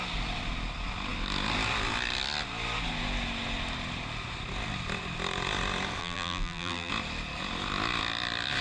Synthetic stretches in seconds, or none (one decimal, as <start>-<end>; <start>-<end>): 6.0-6.9